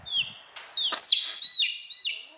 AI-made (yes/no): no